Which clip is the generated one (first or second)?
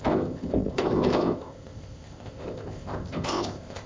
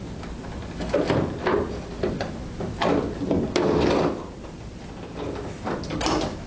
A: first